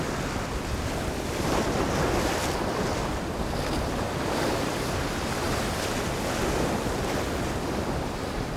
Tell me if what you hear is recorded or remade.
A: remade